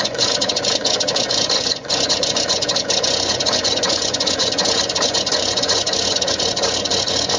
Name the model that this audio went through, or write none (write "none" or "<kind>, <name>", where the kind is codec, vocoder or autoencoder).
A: vocoder, Vocos